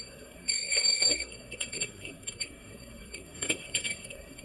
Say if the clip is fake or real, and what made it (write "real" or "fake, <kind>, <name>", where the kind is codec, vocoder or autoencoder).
fake, codec, SNAC